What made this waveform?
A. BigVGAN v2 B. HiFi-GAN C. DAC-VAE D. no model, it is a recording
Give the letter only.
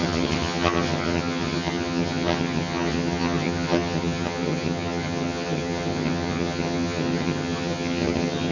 B